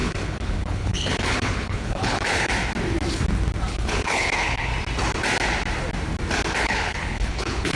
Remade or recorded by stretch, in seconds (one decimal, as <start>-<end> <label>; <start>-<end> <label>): 0.0-2.5 remade; 2.5-3.7 recorded; 3.7-4.7 remade; 4.7-6.6 recorded; 6.6-7.8 remade